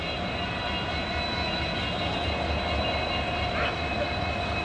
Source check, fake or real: real